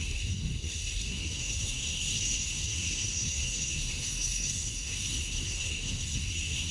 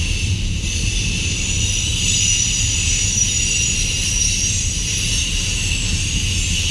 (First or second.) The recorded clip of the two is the second